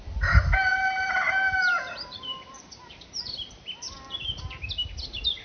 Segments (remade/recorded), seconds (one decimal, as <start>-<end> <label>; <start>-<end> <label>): 0.0-0.7 recorded; 0.7-3.3 remade; 3.3-5.4 recorded